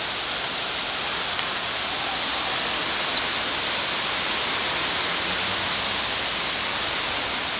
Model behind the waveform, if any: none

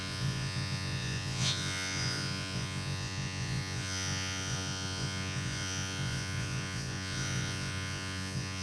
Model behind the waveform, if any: vocoder, Vocos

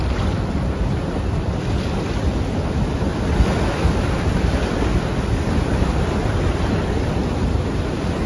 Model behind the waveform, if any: vocoder, BigVGAN v2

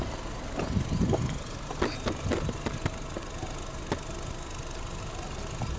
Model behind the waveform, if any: none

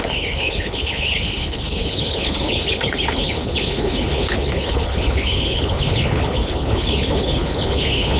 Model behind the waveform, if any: codec, HILCodec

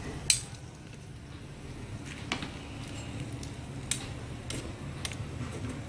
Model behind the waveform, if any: none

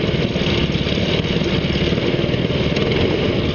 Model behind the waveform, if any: none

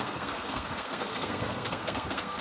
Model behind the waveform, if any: codec, SNAC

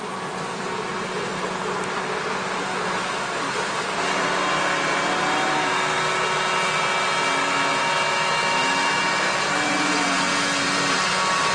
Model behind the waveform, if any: none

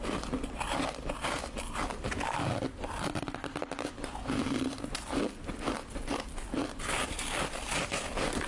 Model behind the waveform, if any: vocoder, BigVGAN v2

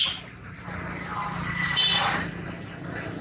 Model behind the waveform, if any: none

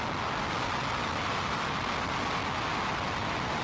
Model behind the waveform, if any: none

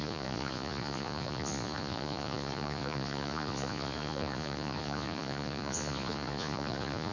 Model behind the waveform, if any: vocoder, Vocos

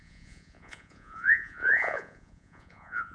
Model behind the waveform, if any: vocoder, Vocos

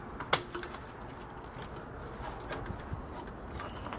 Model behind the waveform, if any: none